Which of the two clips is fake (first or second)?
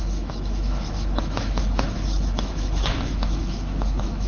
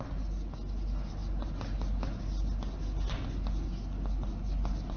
first